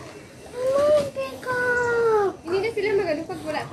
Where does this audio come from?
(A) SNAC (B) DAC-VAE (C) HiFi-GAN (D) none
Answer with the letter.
D